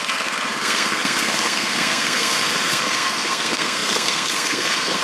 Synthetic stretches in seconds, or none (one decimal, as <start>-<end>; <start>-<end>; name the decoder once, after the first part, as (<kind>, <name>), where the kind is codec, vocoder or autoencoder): 0.0-5.0 (codec, SNAC)